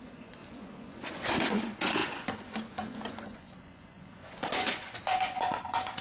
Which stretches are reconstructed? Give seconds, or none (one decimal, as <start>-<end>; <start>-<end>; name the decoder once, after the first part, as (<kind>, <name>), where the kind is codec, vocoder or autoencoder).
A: 0.0-6.0 (vocoder, Vocos)